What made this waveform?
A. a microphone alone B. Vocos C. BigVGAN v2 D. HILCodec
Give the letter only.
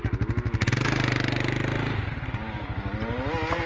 A